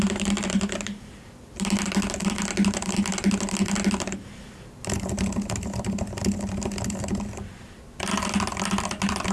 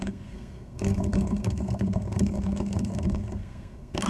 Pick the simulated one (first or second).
second